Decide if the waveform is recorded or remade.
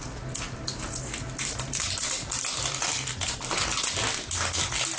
recorded